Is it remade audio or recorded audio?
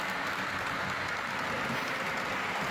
recorded